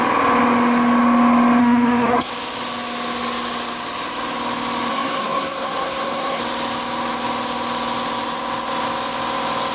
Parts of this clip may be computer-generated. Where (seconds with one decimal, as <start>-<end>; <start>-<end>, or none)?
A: 1.6-2.3; 4.9-6.4